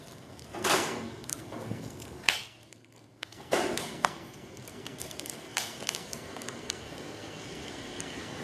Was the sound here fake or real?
fake